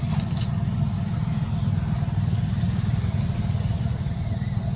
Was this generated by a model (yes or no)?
no